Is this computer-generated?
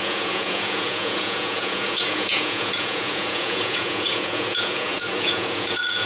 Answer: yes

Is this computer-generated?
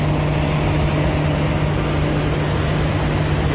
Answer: no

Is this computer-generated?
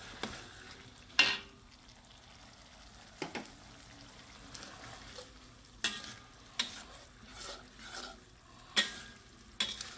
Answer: no